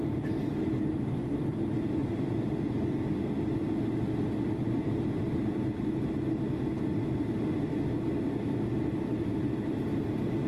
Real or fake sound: real